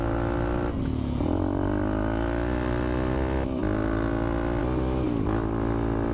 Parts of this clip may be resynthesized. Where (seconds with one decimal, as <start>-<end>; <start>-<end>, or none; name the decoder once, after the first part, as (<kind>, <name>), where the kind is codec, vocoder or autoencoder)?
none